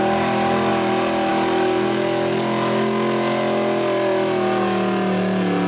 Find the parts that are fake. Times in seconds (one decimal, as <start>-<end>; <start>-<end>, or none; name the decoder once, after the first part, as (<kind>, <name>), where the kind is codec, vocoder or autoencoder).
none